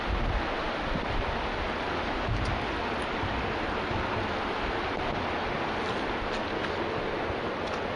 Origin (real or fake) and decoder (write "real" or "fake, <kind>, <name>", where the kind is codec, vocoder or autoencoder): real